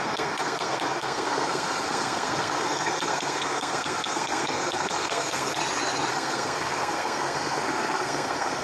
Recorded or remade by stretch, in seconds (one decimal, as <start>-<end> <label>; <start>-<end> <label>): 0.0-5.6 remade; 5.6-6.1 recorded; 6.1-8.6 remade